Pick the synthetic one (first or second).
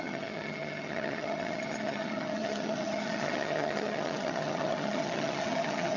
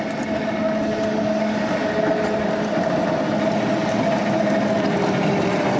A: first